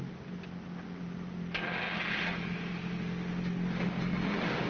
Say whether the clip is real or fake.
real